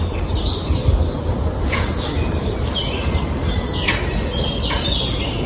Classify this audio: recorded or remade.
recorded